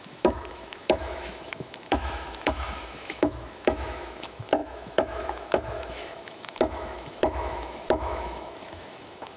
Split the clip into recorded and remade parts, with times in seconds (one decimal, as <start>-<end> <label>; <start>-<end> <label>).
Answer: 0.0-9.4 remade